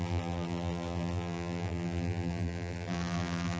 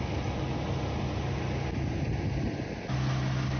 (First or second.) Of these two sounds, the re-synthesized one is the first